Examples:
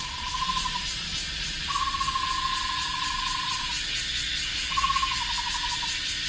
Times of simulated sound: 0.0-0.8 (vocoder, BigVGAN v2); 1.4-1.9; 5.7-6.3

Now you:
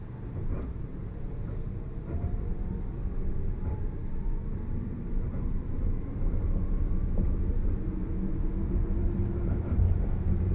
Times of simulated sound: 0.0-10.5 (vocoder, BigVGAN v2)